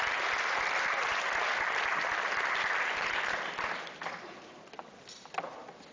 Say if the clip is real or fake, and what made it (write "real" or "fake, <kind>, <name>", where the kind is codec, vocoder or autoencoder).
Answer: real